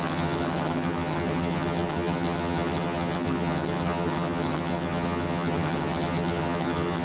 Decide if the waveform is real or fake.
fake